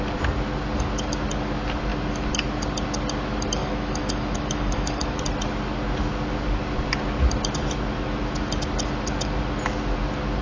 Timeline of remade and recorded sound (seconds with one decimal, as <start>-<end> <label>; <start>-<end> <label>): 0.0-3.6 recorded; 3.6-5.2 remade; 5.2-10.4 recorded